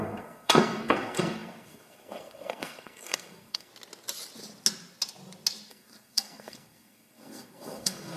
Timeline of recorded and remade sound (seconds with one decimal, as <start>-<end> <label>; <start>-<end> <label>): 0.0-3.7 remade; 3.7-5.7 recorded; 5.7-8.2 remade